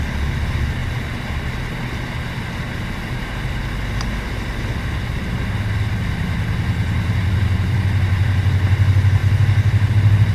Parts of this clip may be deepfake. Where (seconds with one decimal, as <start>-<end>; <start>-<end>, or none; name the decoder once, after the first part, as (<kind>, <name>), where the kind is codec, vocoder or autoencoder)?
0.8-1.4 (vocoder, BigVGAN v2)